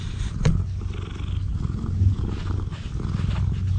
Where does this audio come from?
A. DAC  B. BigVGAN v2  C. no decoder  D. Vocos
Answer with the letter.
C